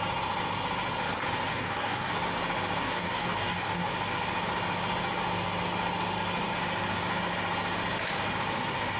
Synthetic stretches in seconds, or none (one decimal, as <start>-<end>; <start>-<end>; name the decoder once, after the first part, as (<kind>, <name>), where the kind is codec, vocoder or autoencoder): 1.5-2.1 (codec, DAC); 2.8-3.9